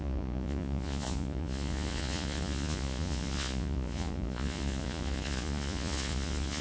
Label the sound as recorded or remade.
remade